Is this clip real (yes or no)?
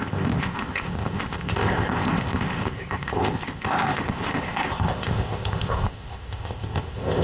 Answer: no